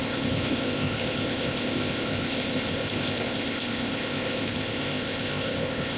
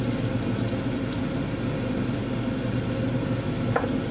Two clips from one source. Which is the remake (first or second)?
first